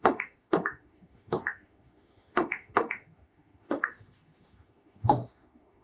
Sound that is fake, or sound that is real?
fake